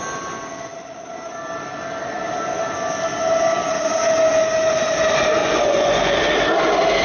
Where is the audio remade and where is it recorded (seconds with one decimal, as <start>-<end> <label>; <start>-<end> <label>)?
0.0-5.4 recorded; 5.4-6.2 remade; 6.2-7.0 recorded